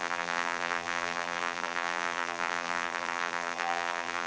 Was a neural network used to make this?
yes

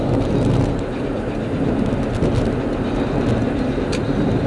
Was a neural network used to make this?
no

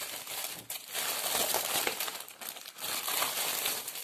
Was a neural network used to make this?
yes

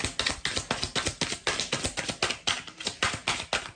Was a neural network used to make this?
no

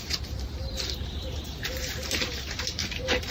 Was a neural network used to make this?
yes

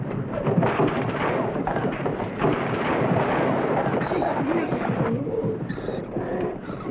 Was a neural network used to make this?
yes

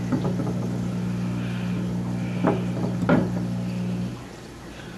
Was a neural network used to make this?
no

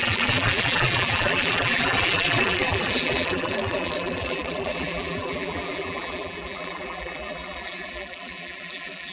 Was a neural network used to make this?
yes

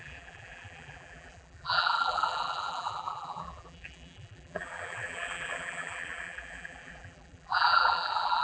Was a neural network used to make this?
yes